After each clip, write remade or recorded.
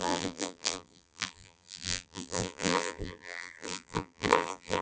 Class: remade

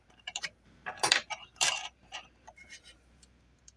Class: remade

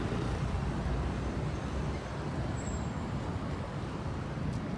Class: remade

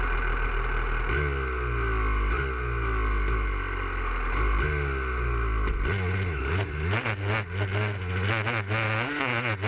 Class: recorded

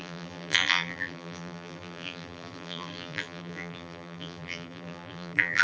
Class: remade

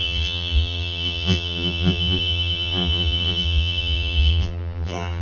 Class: remade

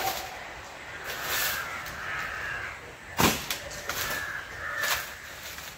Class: recorded